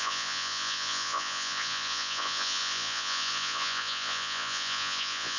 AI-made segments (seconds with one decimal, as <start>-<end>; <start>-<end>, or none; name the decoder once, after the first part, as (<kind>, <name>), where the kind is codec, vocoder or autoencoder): 0.0-5.4 (vocoder, Vocos)